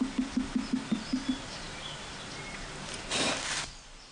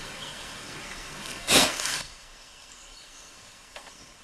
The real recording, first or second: first